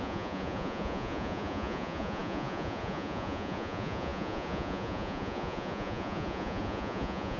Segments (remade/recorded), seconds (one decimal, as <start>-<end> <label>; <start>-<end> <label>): 0.0-7.4 remade